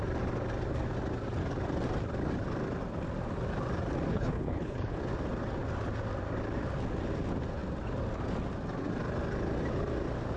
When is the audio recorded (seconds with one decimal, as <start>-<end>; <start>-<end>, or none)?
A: 0.0-4.1; 5.0-10.4